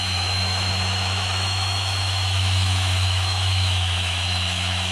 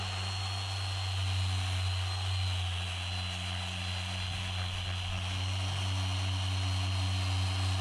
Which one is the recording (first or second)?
second